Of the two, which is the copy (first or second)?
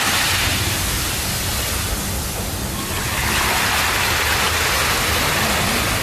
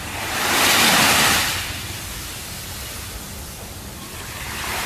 second